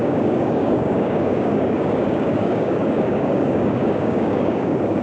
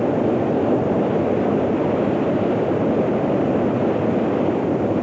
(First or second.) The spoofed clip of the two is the first